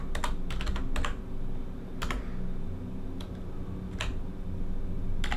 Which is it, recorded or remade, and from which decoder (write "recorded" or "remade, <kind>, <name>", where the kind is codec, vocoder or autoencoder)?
recorded